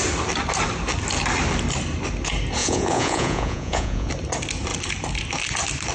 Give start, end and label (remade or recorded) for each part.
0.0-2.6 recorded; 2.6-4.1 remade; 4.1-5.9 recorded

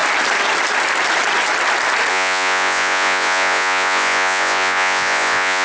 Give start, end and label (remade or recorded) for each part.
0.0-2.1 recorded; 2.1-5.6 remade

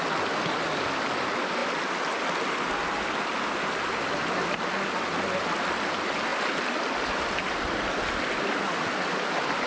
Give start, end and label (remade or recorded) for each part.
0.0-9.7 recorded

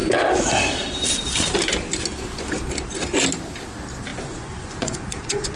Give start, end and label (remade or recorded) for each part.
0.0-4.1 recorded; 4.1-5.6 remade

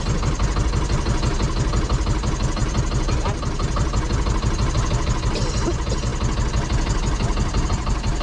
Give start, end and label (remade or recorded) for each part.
0.0-8.2 recorded

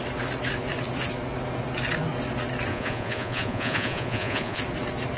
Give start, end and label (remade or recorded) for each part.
0.0-2.7 recorded; 2.7-4.6 remade; 4.6-5.2 recorded

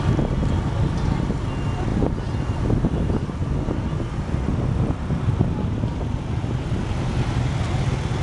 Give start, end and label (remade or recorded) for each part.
0.0-8.2 recorded

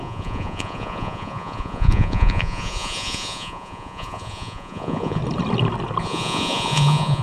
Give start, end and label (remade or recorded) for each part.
0.0-5.2 remade; 5.2-6.0 recorded; 6.0-7.2 remade